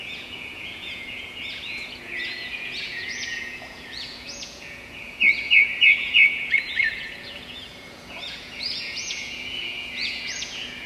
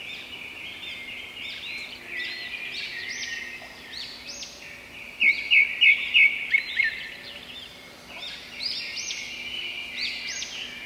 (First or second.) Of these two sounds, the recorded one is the second